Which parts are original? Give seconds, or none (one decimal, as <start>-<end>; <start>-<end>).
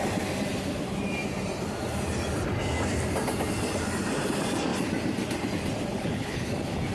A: 0.0-5.9; 6.5-6.9